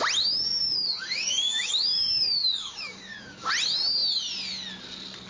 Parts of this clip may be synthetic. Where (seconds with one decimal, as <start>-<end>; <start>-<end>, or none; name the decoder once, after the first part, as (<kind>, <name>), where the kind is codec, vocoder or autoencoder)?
0.5-3.5 (codec, DAC)